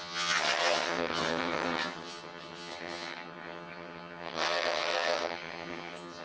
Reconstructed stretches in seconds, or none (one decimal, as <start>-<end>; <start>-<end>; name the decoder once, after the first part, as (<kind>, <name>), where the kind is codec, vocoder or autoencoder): 0.0-6.2 (vocoder, HiFi-GAN)